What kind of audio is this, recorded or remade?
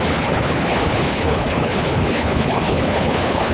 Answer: remade